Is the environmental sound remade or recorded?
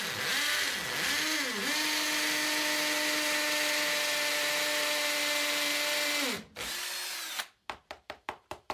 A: recorded